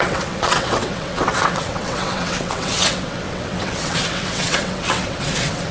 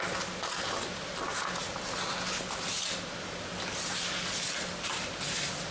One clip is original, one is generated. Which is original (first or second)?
second